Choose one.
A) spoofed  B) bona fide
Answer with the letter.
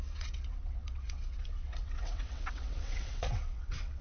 A